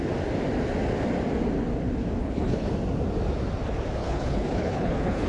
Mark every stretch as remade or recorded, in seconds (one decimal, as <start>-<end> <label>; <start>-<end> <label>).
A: 0.0-2.2 recorded; 2.2-2.7 remade; 2.7-4.0 recorded; 4.0-5.3 remade